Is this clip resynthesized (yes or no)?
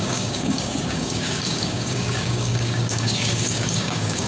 yes